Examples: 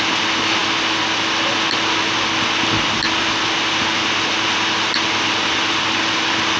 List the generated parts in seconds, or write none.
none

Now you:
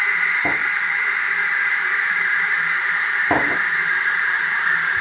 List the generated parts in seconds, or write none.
0.0-5.0 (vocoder, BigVGAN v2)

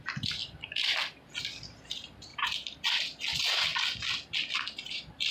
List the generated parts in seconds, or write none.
0.4-1.4 (vocoder, BigVGAN v2); 2.3-3.2; 3.7-5.3

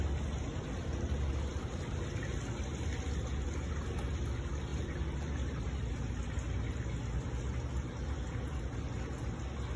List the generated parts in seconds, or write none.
4.7-5.7 (vocoder, BigVGAN v2)

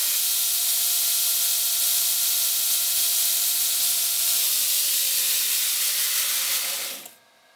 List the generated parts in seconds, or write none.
3.1-4.4 (vocoder, BigVGAN v2)

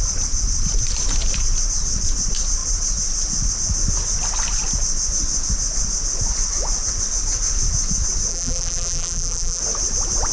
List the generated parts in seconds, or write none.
8.3-9.6 (vocoder, BigVGAN v2)